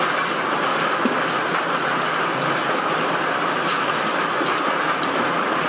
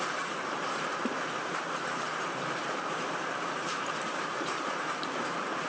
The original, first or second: first